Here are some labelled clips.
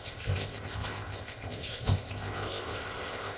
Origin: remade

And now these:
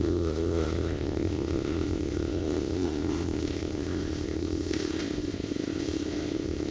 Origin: remade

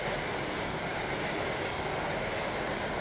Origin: recorded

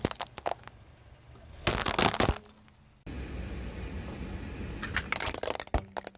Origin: recorded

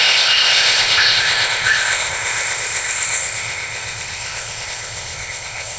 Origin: remade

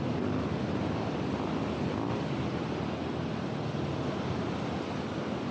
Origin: recorded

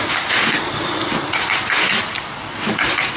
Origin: recorded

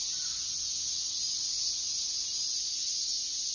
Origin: recorded